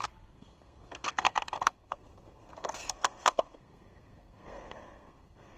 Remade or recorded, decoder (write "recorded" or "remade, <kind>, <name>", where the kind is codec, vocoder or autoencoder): remade, codec, SNAC